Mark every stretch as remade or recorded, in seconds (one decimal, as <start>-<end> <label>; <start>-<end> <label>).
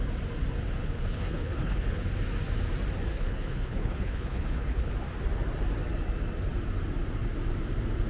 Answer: 0.0-0.8 recorded; 0.8-2.0 remade; 2.0-3.1 recorded; 3.1-4.9 remade; 4.9-8.1 recorded